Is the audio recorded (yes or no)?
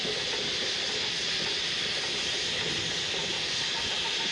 yes